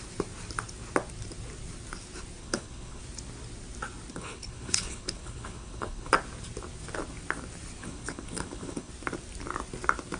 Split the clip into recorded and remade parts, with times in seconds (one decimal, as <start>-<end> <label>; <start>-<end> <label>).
0.0-2.4 recorded; 2.4-3.0 remade; 3.0-4.1 recorded; 4.1-6.1 remade; 6.1-7.8 recorded; 7.8-8.9 remade; 8.9-10.2 recorded